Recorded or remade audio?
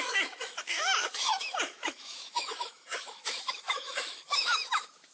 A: remade